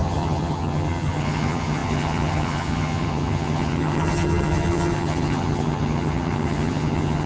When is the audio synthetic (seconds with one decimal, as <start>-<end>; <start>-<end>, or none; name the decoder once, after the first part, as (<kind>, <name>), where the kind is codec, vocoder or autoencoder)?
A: 0.0-7.3 (vocoder, HiFi-GAN)